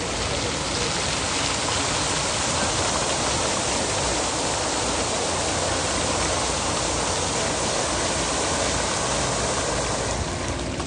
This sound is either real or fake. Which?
real